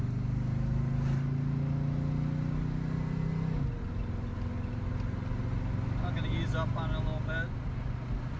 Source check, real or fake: real